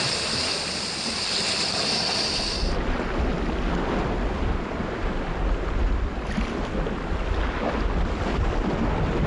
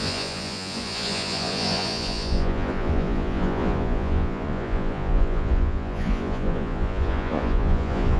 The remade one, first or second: second